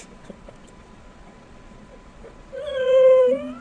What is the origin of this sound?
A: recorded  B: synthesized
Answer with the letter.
B